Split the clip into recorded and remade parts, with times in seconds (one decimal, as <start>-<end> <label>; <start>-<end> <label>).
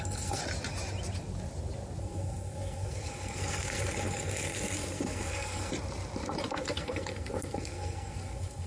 0.0-0.4 remade; 0.4-2.0 recorded; 2.0-5.7 remade; 5.7-6.5 recorded; 6.5-8.7 remade